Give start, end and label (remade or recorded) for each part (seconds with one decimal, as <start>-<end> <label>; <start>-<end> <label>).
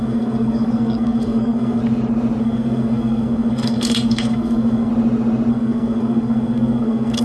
0.0-1.8 remade; 1.8-2.4 recorded; 2.4-4.9 remade; 4.9-5.5 recorded; 5.5-7.2 remade